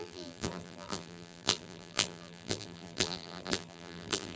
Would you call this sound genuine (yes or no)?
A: no